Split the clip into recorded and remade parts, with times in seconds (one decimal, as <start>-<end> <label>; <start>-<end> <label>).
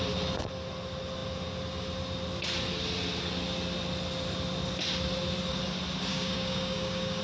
0.0-6.1 recorded; 6.1-7.2 remade